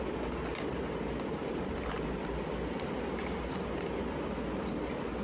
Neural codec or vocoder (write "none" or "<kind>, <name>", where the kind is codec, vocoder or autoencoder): none